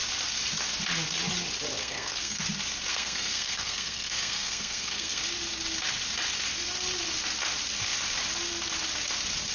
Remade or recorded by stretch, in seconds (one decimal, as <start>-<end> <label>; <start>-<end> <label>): 0.0-1.8 recorded; 1.8-2.4 remade; 2.4-2.9 recorded; 2.9-5.2 remade; 5.2-9.5 recorded